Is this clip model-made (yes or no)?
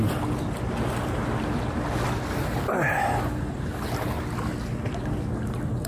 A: no